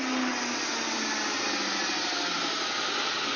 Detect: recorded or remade recorded